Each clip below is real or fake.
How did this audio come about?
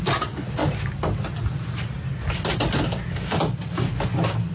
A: real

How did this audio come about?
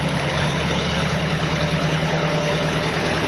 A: fake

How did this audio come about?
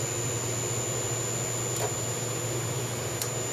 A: real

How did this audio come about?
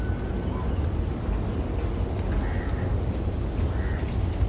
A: real